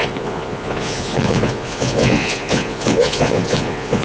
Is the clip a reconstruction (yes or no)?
yes